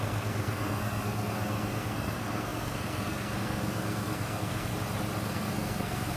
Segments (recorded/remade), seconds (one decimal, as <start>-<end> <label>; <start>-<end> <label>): 0.0-4.7 remade; 4.7-5.2 recorded; 5.2-6.2 remade